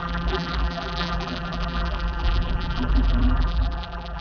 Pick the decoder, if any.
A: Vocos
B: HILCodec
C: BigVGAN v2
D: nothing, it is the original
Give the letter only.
C